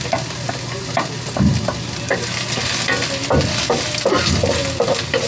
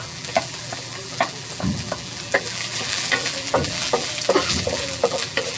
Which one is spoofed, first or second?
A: second